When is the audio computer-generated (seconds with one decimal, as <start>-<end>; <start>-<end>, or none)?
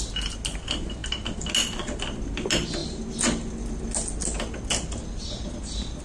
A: none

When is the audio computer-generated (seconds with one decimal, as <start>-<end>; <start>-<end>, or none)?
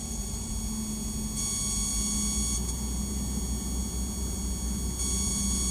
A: 0.0-0.5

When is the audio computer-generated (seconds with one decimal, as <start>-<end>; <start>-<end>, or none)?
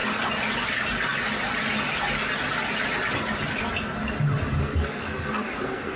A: 4.6-6.0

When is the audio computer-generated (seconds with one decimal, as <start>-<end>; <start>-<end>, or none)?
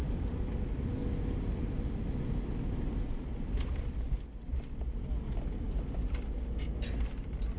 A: none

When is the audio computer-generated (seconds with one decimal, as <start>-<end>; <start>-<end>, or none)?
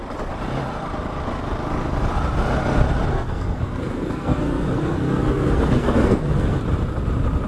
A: 3.1-6.6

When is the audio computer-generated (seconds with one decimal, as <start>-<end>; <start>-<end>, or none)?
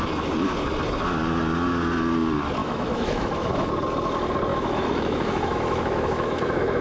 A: 2.6-3.7; 4.5-6.8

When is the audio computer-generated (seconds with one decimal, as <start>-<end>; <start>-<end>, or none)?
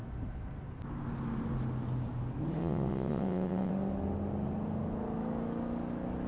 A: 2.6-3.7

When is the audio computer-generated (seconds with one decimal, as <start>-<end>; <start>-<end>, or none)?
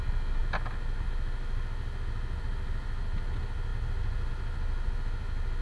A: none